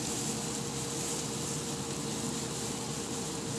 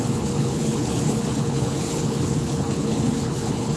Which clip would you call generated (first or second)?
second